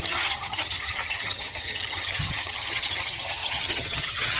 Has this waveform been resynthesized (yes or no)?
yes